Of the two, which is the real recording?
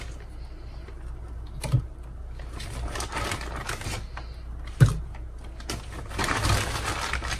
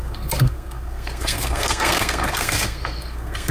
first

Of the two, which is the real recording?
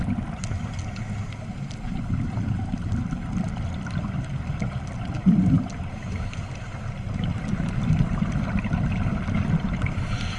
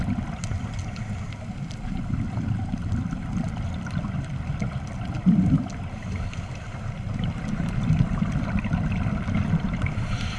first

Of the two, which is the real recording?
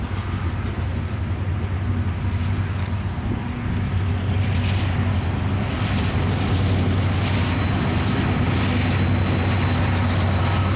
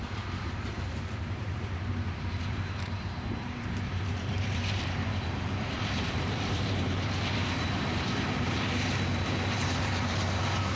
first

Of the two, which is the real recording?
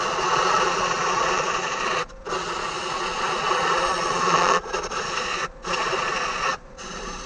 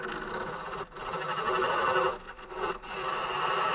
second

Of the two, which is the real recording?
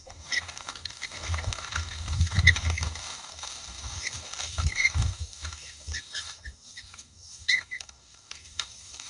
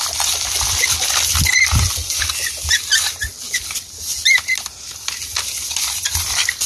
second